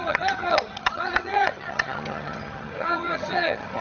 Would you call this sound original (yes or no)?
no